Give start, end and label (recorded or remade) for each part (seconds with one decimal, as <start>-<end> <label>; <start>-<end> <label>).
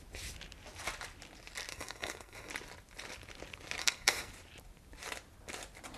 0.0-1.7 recorded; 1.7-2.5 remade; 2.5-3.8 recorded; 3.8-4.3 remade; 4.3-6.0 recorded